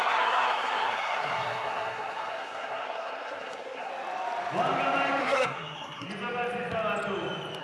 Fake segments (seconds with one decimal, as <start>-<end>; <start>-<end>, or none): 0.0-3.9; 5.2-6.1